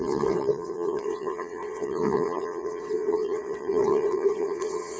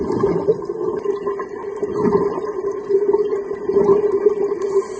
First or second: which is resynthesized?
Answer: first